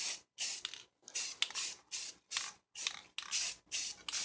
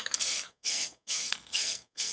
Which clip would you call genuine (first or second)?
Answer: first